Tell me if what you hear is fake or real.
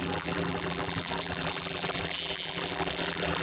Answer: fake